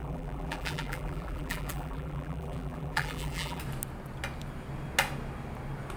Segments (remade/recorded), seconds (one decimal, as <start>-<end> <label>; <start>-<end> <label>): 0.0-3.6 remade; 3.6-6.0 recorded